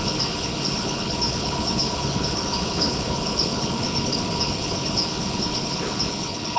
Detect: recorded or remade remade